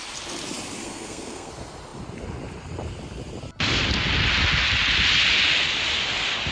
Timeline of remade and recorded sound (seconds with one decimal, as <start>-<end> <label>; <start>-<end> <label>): 0.0-0.8 recorded; 0.8-1.5 remade; 1.5-6.5 recorded